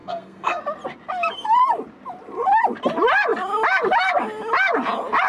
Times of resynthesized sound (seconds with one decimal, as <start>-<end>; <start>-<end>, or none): 0.0-0.6